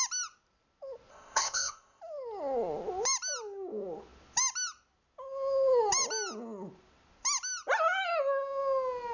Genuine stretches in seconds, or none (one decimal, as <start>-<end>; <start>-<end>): 0.0-1.1; 2.0-9.1

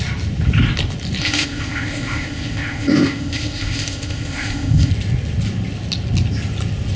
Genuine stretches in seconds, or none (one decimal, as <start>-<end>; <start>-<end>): 0.0-1.2; 4.9-7.0